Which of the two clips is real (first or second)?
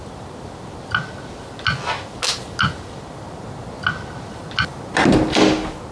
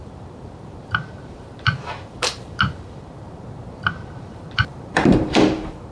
first